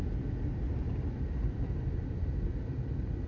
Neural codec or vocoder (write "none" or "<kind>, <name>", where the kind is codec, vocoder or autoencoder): none